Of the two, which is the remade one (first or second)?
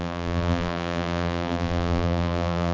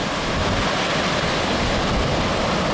first